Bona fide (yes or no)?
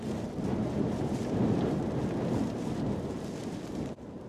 yes